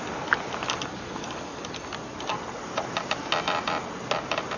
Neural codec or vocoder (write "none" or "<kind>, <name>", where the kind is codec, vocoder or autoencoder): none